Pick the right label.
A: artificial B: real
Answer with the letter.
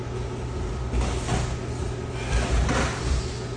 B